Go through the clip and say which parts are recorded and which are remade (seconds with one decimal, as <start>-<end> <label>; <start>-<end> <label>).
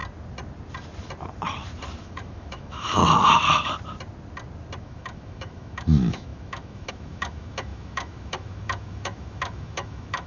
0.0-2.0 recorded; 2.0-3.0 remade; 3.0-4.8 recorded; 4.8-10.3 remade